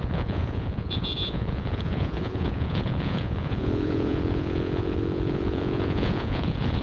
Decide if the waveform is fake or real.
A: fake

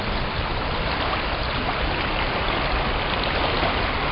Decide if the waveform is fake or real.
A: real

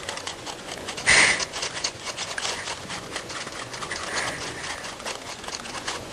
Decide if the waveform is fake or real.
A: fake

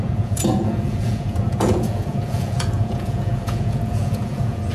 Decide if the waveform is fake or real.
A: fake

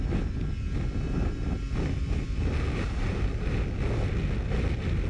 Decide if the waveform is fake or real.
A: real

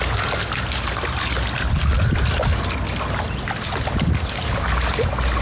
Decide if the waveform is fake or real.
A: real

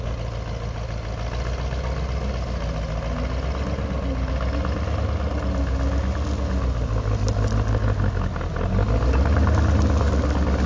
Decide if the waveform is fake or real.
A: real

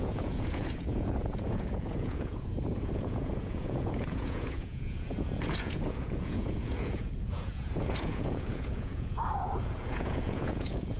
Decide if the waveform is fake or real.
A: fake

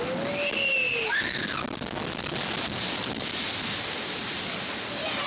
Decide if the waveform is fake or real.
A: real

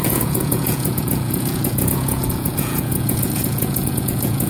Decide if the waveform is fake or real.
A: fake